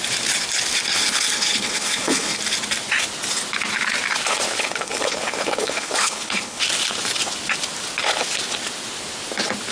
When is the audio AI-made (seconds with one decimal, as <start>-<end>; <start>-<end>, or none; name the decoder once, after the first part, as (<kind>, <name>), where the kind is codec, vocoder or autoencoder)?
1.0-2.4 (codec, HILCodec); 4.6-6.6